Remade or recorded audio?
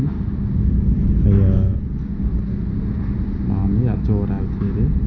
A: recorded